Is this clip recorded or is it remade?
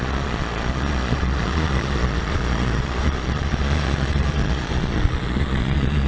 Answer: remade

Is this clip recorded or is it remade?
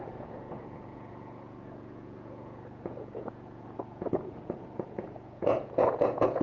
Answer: remade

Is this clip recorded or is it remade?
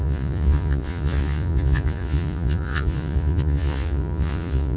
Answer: remade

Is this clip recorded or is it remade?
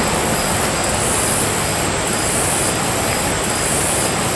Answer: recorded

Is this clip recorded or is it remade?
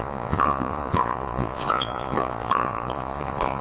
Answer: remade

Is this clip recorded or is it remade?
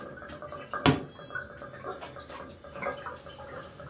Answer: recorded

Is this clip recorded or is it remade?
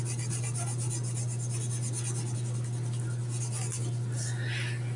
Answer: recorded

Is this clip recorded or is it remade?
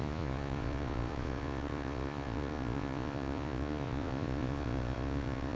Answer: remade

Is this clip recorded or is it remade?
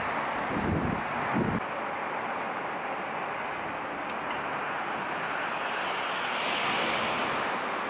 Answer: recorded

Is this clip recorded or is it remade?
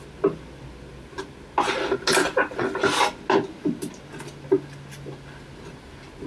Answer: recorded